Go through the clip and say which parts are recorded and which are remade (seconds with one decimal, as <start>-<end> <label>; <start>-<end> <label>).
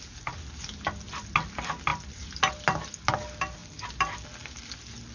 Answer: 0.0-5.1 recorded